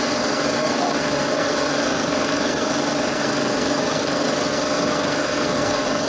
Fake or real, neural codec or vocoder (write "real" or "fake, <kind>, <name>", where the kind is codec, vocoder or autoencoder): fake, codec, SNAC